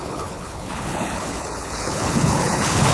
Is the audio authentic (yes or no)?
no